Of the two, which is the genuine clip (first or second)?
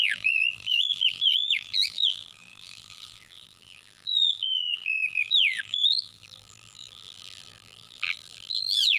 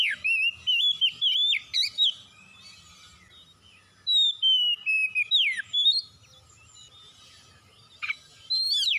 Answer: second